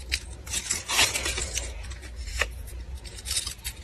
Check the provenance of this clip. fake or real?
fake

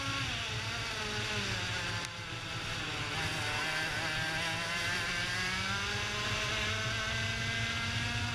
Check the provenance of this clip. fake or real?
real